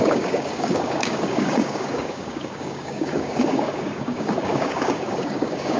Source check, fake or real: fake